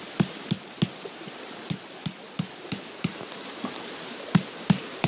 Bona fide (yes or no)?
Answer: yes